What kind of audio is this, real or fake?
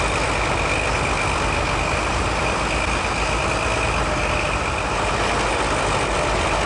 real